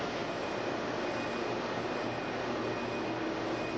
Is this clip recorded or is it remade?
recorded